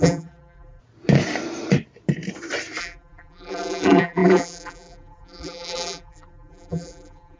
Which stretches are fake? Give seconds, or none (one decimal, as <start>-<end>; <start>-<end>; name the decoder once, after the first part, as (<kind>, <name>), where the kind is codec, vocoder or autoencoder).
0.0-0.8 (vocoder, BigVGAN v2); 2.8-7.4